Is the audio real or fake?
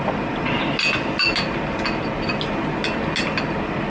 real